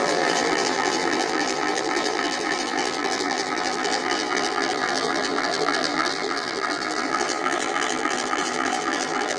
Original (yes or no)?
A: no